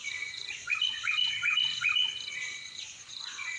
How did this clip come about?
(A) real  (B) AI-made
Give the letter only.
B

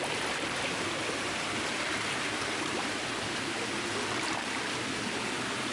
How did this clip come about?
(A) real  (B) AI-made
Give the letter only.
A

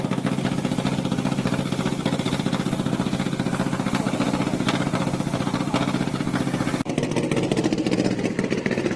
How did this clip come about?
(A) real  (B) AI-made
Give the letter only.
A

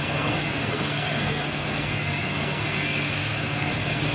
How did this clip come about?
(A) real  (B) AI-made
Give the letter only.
B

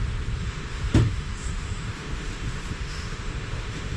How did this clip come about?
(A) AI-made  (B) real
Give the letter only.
A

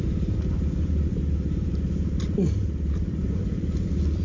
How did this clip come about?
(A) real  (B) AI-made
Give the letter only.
A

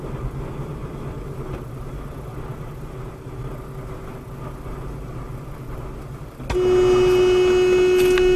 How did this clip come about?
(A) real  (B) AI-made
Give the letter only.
A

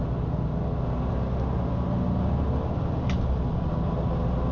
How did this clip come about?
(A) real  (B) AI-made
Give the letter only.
A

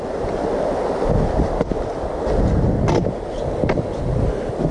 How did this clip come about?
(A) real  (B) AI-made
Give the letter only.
A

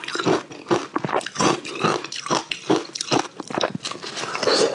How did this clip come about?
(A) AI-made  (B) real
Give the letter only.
B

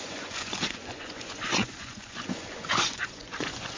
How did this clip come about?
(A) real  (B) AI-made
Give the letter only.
B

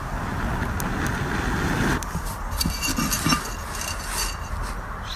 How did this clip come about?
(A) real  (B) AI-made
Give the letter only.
A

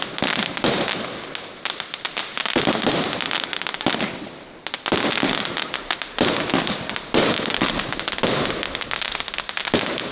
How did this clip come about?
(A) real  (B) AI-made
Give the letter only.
A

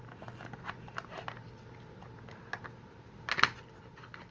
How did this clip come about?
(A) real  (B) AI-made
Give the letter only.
A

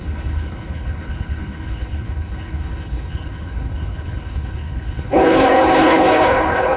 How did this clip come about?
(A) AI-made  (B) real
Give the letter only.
A